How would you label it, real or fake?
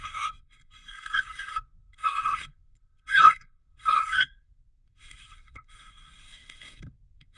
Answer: fake